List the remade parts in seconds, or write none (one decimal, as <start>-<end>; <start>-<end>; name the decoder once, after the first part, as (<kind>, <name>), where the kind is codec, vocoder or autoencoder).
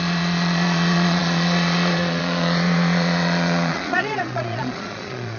0.0-5.4 (vocoder, Vocos)